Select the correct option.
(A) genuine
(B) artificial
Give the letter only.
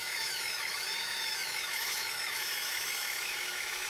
B